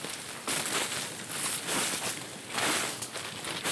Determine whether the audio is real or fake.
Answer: real